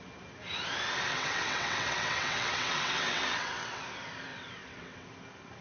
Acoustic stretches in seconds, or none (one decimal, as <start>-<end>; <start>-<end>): 0.0-1.1; 3.8-4.3; 5.1-5.6